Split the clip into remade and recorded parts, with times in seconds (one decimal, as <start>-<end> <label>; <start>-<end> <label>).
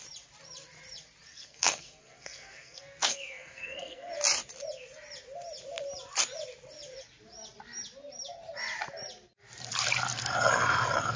0.0-1.3 recorded; 1.3-4.1 remade; 4.1-11.2 recorded